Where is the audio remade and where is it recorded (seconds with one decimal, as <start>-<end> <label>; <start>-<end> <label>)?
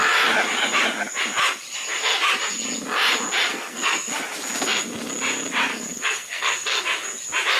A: 0.0-3.5 recorded; 3.5-4.1 remade; 4.1-5.7 recorded; 5.7-6.8 remade; 6.8-7.6 recorded